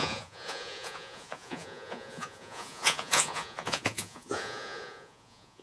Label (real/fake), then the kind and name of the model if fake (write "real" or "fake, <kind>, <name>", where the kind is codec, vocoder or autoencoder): fake, vocoder, Vocos